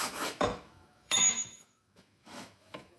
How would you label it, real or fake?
fake